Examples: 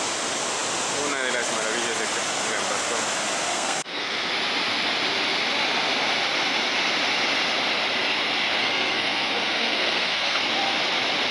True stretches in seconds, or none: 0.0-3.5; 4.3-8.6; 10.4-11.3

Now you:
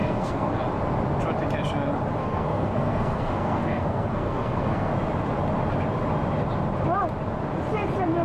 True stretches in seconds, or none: 0.6-2.2; 4.9-8.2

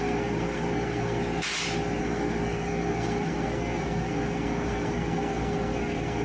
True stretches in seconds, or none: 1.2-2.0

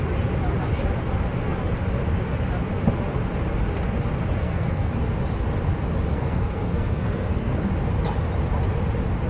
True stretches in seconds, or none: 0.0-4.4; 4.9-6.1; 7.6-9.3

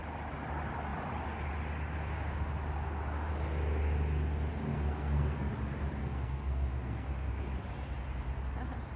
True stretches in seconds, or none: 0.0-4.7; 5.5-6.0; 7.4-9.0

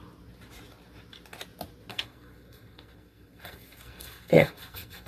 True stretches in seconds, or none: 0.0-1.9